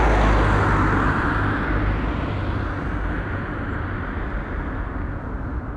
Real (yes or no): yes